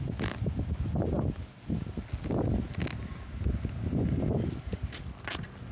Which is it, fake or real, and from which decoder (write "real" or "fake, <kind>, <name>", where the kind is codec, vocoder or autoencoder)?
real